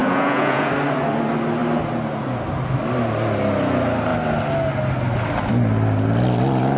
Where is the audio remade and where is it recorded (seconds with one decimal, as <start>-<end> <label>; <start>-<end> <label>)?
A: 0.0-0.7 remade; 0.7-6.8 recorded